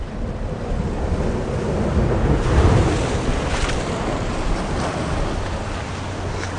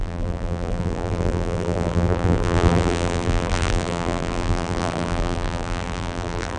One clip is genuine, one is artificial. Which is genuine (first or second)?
first